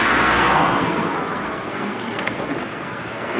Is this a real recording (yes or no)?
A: no